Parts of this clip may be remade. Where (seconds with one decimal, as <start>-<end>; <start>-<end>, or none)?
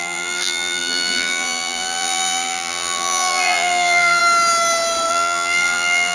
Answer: 0.0-4.2; 5.1-6.1